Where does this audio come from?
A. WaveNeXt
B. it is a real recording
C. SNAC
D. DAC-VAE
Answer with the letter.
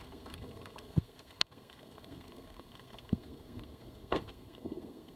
C